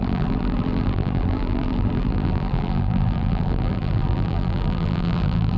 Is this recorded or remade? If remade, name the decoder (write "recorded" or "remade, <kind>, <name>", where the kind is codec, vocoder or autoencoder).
remade, vocoder, BigVGAN v2